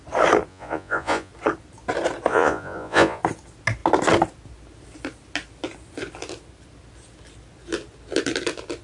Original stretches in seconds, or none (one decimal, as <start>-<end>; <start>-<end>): 0.0-0.5; 1.3-2.3; 3.2-8.8